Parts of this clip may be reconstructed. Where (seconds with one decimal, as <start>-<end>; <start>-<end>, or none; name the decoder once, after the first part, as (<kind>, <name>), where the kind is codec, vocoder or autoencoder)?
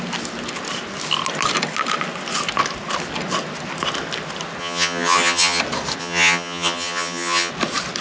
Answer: 4.6-5.6 (vocoder, HiFi-GAN); 6.0-7.5